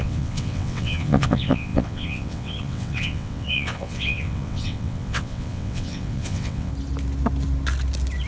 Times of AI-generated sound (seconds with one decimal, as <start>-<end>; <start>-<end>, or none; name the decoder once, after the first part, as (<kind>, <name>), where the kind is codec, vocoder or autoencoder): 0.0-6.7 (vocoder, WaveNeXt)